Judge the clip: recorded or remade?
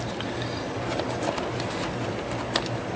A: recorded